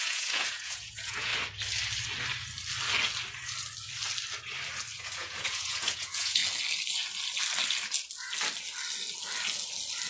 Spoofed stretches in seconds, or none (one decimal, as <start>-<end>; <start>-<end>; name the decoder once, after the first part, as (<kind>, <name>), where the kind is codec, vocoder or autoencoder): 0.0-1.3 (vocoder, Vocos); 5.0-6.4